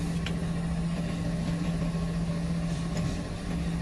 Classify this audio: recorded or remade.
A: recorded